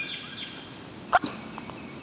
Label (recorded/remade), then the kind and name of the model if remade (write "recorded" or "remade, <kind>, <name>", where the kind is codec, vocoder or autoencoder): recorded